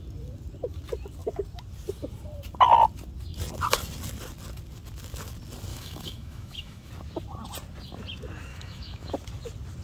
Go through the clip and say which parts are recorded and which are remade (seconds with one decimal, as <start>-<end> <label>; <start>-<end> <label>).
0.0-5.7 recorded; 5.7-6.9 remade; 6.9-8.5 recorded; 8.5-9.1 remade; 9.1-9.8 recorded